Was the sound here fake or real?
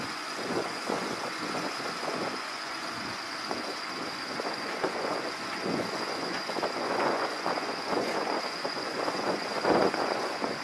fake